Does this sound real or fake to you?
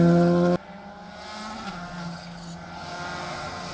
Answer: real